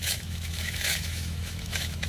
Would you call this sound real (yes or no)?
no